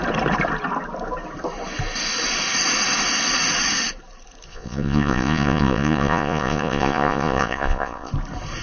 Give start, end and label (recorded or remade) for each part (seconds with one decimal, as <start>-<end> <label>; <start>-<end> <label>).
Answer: 0.0-4.5 recorded; 4.5-8.1 remade; 8.1-8.6 recorded